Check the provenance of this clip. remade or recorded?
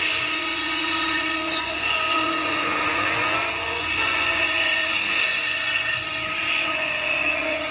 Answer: remade